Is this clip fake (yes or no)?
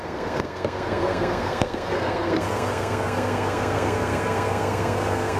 yes